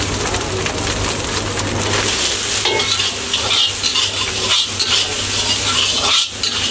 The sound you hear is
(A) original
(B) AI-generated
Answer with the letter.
A